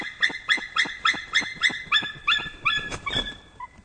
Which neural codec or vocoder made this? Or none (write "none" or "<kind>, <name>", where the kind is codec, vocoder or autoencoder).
vocoder, BigVGAN v2